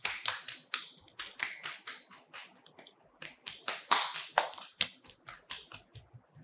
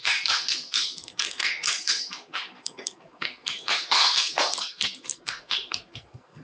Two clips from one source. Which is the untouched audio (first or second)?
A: first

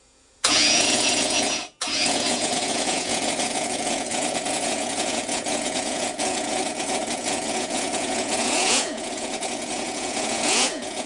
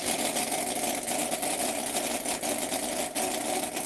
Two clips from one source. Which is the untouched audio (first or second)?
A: second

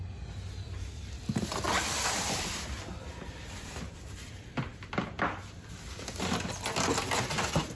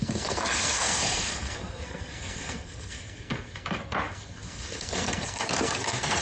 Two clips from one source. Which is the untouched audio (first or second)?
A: first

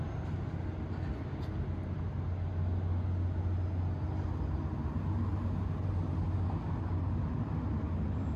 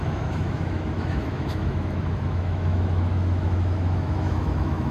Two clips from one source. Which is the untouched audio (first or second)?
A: first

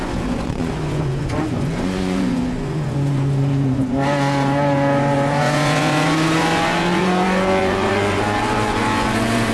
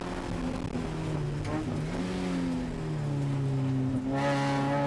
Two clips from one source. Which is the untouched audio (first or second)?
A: second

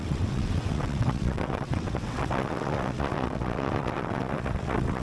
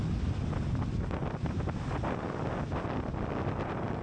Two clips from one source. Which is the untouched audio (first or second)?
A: second